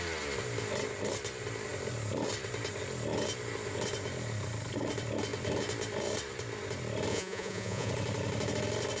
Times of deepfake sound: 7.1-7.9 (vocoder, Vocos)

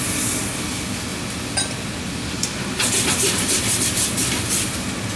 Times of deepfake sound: none

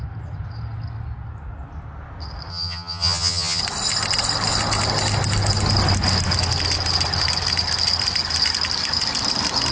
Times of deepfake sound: 2.5-3.6 (vocoder, HiFi-GAN)

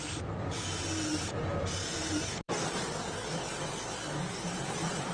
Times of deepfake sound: 1.1-3.1 (vocoder, BigVGAN v2)

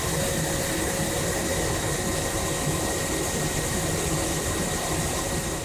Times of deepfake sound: none